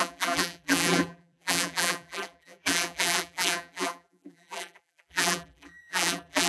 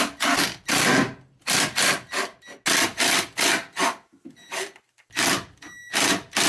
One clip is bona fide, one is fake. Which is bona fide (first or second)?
second